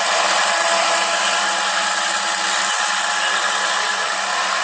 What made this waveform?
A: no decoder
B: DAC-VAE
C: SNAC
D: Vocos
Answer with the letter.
A